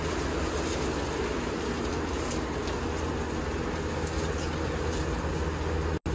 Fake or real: real